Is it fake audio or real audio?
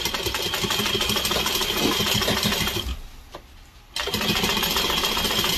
real